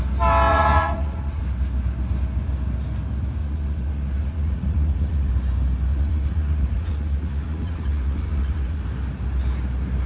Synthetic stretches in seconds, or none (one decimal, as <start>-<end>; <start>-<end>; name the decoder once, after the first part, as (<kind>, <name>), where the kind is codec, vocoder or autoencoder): 0.5-1.4 (vocoder, Vocos); 3.4-5.3; 5.9-8.8